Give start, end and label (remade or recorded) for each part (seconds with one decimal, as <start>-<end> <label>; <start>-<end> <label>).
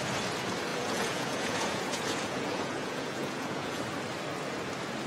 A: 0.0-0.7 recorded; 0.7-3.8 remade; 3.8-5.1 recorded